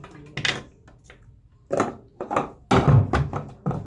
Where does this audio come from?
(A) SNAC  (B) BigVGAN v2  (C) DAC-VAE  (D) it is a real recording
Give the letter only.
D